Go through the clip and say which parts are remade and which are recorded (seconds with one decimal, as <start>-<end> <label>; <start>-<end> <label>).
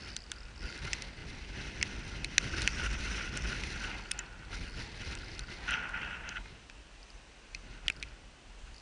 0.0-8.8 recorded